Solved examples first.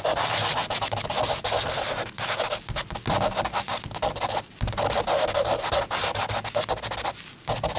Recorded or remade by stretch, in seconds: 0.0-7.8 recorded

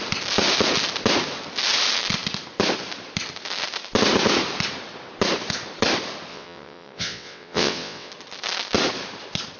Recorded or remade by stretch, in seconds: 0.0-6.3 recorded; 6.3-8.1 remade; 8.1-9.6 recorded